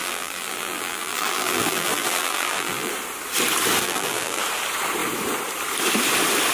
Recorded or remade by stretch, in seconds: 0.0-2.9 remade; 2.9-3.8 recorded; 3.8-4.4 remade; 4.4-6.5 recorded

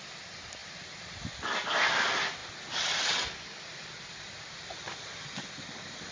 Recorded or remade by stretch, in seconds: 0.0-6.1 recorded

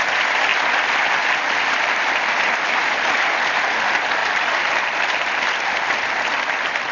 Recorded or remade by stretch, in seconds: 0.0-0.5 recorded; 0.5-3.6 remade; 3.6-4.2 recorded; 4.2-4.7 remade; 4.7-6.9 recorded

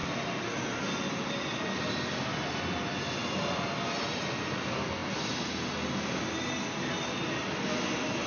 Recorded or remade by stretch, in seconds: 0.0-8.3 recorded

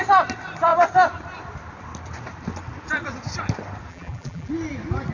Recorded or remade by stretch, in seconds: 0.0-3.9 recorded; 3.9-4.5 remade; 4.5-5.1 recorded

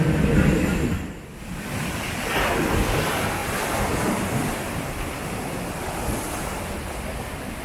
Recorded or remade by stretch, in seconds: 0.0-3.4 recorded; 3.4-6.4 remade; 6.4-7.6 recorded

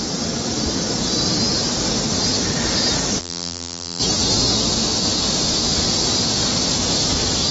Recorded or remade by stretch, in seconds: 0.0-3.2 recorded; 3.2-4.0 remade; 4.0-7.5 recorded

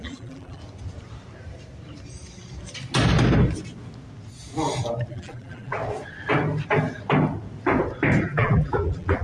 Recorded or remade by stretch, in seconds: 0.0-0.6 remade; 0.6-5.1 recorded; 5.1-5.8 remade; 5.8-8.2 recorded; 8.2-9.2 remade